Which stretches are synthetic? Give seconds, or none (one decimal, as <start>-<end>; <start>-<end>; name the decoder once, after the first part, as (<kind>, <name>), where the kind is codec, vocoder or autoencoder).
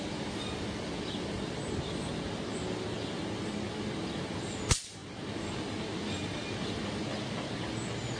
none